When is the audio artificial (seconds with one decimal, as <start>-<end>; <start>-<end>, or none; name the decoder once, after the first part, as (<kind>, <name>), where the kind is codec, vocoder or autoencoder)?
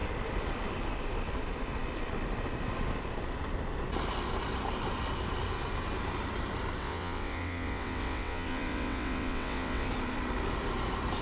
6.8-9.9 (vocoder, WaveNeXt)